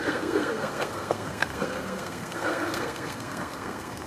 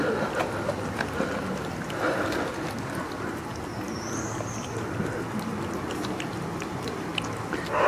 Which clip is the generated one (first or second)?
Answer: first